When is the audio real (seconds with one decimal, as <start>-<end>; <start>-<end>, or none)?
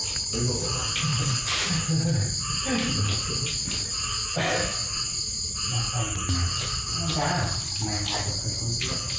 0.0-1.1; 1.7-4.8; 5.5-9.2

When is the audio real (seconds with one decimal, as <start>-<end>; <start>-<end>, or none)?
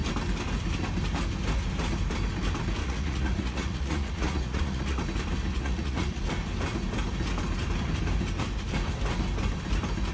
0.0-2.8; 5.0-5.5; 6.2-10.1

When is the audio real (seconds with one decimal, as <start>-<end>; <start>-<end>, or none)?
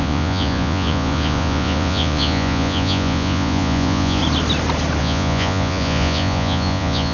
4.2-5.0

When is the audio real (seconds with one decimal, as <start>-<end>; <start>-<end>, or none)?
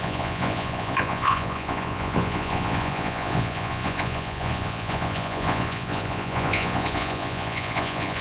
none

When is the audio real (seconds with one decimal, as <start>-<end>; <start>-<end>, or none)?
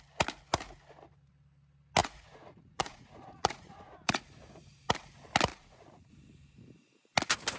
0.0-2.0; 4.2-5.5; 6.1-7.6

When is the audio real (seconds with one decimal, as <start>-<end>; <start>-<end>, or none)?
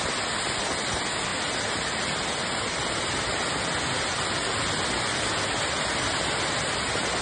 0.0-7.2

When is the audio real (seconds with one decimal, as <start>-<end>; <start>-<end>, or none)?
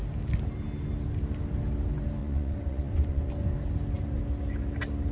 0.0-2.2; 3.3-5.1